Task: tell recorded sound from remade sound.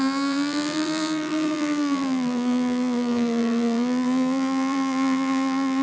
remade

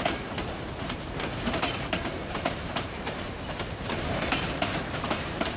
remade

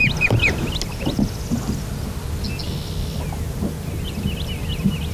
recorded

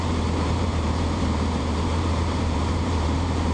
remade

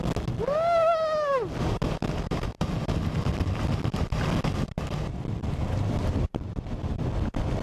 recorded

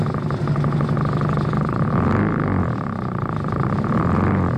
recorded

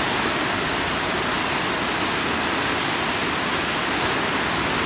recorded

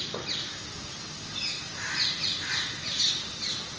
recorded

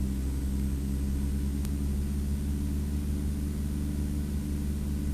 recorded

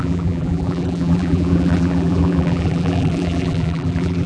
remade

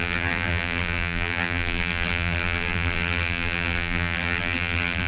remade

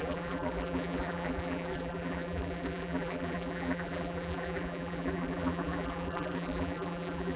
remade